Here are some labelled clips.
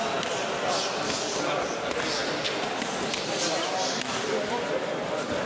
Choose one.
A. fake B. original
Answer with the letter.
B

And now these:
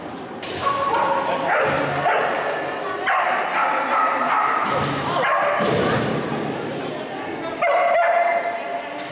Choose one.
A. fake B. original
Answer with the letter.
B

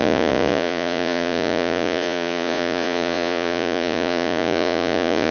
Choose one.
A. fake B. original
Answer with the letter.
A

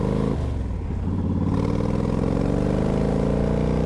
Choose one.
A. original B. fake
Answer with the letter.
A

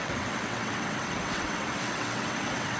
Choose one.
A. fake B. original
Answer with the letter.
A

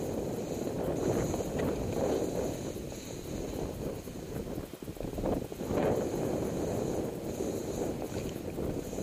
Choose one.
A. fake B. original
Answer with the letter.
B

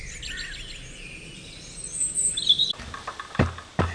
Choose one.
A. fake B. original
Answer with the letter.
B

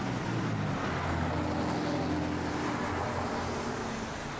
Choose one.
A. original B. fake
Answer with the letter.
A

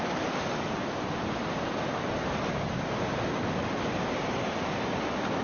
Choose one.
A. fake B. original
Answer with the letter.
B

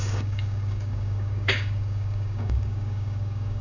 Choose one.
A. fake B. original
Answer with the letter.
A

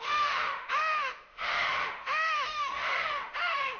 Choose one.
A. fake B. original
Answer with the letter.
A